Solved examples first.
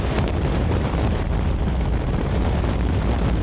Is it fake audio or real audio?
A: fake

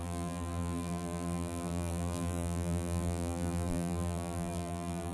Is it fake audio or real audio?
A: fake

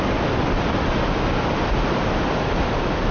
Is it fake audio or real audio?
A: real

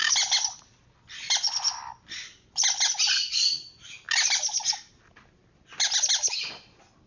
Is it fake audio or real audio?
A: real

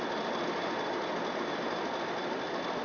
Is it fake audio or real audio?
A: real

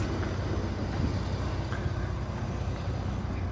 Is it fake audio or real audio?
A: real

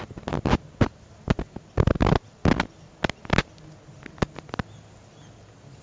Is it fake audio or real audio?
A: real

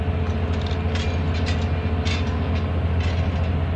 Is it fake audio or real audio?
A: real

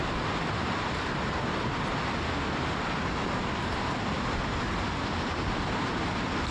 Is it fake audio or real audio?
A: real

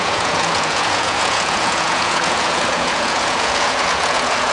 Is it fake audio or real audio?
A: fake